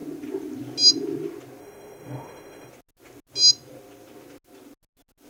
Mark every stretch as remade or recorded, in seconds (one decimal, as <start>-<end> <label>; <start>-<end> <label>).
0.0-1.6 recorded; 1.6-2.7 remade; 2.7-5.3 recorded